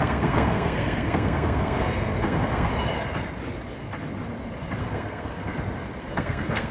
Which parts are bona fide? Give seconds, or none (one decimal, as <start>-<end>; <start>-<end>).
2.7-4.8; 5.5-6.0

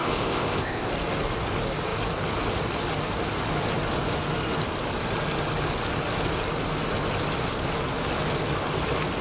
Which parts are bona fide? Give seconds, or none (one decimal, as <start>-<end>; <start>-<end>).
0.9-9.2

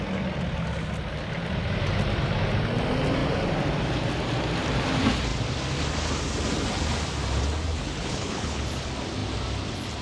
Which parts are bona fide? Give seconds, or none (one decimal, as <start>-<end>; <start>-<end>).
0.0-7.7; 8.6-10.0

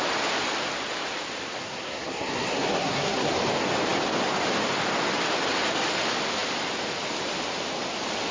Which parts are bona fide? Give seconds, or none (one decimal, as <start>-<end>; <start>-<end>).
0.0-1.6; 3.3-8.3

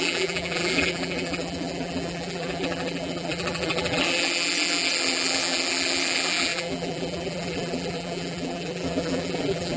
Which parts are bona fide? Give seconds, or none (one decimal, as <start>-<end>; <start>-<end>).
none

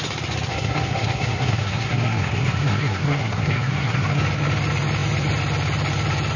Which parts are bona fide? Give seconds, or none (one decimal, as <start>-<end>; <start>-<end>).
0.0-0.5; 4.2-6.4

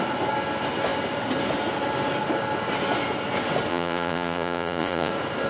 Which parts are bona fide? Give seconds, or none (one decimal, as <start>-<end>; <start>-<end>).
0.0-3.7; 5.1-5.5